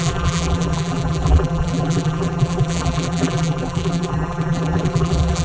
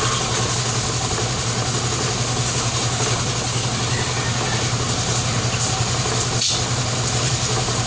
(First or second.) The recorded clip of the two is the second